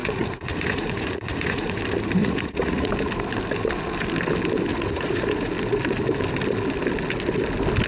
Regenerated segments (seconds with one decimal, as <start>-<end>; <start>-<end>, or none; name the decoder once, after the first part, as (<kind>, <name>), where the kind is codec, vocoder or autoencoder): 0.0-1.8 (vocoder, Vocos); 2.2-2.9; 4.7-5.5